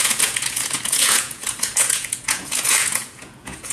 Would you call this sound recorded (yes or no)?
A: no